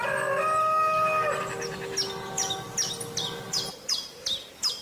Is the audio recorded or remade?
recorded